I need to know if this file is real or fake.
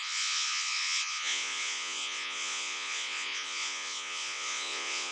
fake